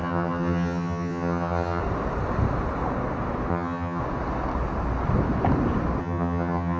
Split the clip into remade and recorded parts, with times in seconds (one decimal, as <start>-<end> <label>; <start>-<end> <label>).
0.0-1.8 remade; 1.8-3.5 recorded; 3.5-4.0 remade; 4.0-6.0 recorded; 6.0-6.8 remade